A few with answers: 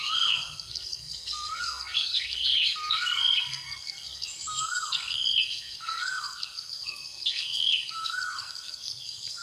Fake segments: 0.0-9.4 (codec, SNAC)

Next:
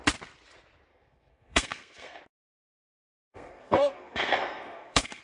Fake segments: 0.9-2.2 (codec, SNAC); 3.2-5.2

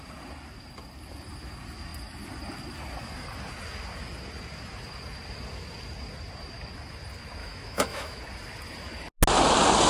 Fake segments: 7.4-8.2 (autoencoder, DAC-VAE)

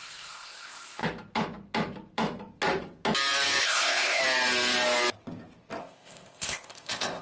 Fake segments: 0.0-1.0 (codec, ZipCodec); 3.6-4.2; 5.8-7.2

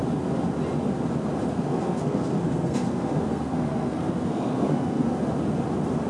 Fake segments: 1.5-5.2 (codec, SNAC)

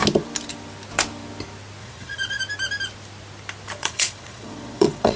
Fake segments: 1.8-2.4 (vocoder, Vocos); 3.8-5.2

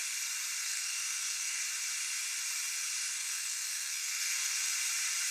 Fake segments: 0.6-1.6 (codec, SNAC); 3.1-4.7